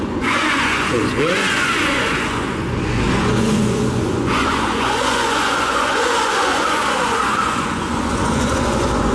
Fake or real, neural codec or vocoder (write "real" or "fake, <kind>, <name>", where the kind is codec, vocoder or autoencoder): fake, vocoder, Vocos